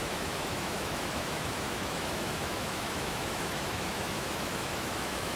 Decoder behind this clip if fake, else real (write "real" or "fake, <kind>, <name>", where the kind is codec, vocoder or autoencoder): fake, autoencoder, DAC-VAE